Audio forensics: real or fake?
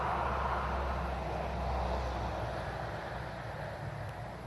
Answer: real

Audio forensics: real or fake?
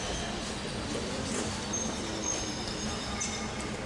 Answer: real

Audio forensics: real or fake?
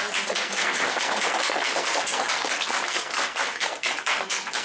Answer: fake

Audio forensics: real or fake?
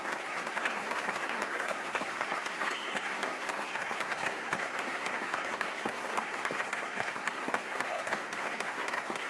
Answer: fake